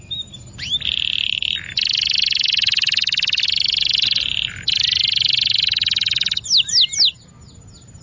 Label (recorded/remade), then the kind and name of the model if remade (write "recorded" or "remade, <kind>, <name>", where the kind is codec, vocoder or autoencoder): recorded